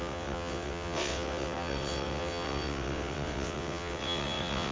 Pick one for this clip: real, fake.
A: fake